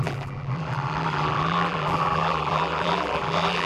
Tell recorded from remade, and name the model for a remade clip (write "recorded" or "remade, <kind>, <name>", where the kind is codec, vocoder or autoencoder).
remade, vocoder, BigVGAN v2